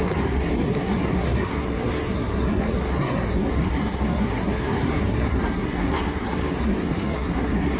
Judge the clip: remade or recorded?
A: remade